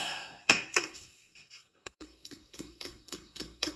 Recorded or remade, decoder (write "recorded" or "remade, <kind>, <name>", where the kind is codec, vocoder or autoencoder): remade, codec, SNAC